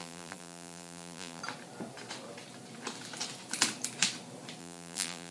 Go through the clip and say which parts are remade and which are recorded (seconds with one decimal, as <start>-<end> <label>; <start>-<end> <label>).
0.0-1.4 remade; 1.4-4.6 recorded; 4.6-5.3 remade